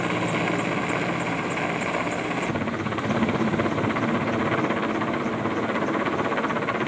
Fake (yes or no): no